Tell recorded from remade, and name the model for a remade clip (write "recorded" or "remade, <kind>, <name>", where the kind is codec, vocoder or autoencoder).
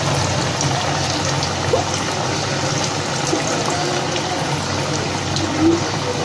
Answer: recorded